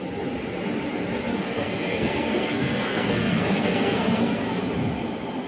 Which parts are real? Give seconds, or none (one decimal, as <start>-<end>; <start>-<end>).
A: 0.0-1.3; 4.6-5.5